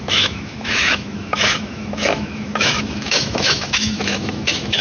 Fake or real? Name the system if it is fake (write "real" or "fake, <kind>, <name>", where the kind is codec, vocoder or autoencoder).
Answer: fake, autoencoder, DAC-VAE